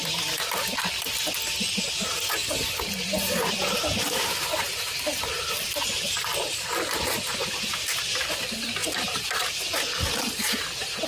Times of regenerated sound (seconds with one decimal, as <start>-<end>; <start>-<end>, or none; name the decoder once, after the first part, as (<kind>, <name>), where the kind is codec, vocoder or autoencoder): 5.1-7.6 (vocoder, BigVGAN v2)